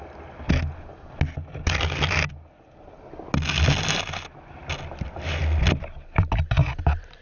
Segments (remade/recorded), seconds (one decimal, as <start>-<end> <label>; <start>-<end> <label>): 0.0-7.2 recorded